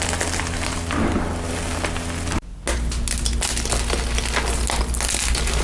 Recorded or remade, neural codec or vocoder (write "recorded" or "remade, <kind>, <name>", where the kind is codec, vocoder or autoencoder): recorded